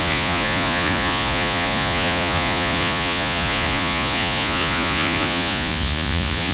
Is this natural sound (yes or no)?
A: no